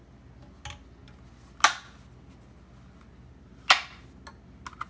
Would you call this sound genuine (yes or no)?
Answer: yes